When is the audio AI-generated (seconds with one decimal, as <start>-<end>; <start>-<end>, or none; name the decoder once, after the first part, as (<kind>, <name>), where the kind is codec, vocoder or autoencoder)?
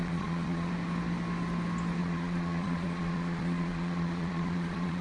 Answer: 0.0-0.7 (vocoder, Vocos); 2.0-5.0